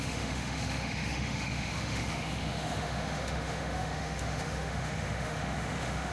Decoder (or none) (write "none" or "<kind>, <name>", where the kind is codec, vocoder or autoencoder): autoencoder, DAC-VAE